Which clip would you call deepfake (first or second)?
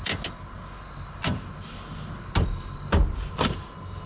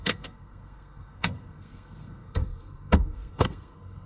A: second